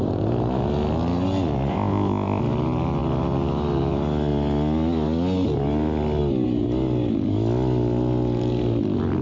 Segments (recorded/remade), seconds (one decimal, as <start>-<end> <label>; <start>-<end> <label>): 0.0-1.7 recorded; 1.7-2.4 remade; 2.4-9.2 recorded